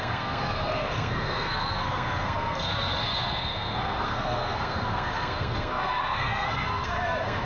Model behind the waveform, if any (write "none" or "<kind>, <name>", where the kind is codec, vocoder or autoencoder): codec, SNAC